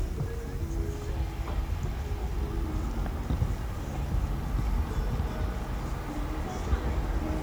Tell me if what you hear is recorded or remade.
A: recorded